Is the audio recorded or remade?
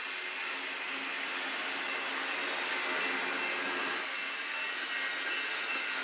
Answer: recorded